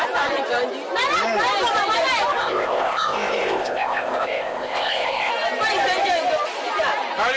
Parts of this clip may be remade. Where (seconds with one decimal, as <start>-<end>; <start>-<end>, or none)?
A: 2.4-5.3